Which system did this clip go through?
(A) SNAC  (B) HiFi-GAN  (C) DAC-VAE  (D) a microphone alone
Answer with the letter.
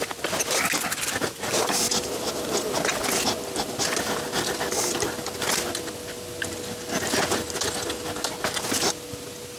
D